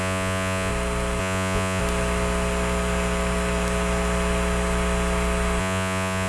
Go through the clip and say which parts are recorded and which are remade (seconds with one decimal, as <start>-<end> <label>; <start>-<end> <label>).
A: 0.0-0.7 remade; 0.7-1.2 recorded; 1.2-1.8 remade; 1.8-5.6 recorded; 5.6-6.3 remade